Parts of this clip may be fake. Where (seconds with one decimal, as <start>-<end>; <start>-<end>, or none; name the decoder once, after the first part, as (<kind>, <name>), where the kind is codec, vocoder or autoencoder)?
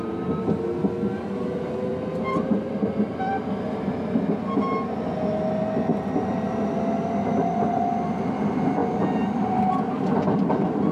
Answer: none